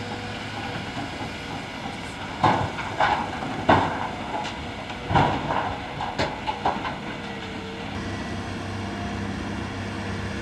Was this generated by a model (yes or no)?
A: no